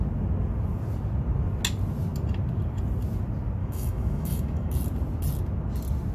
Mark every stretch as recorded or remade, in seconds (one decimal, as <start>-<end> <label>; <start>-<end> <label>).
0.0-3.6 recorded; 3.6-4.7 remade; 4.7-6.1 recorded